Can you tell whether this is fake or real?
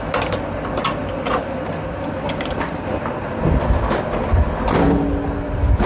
real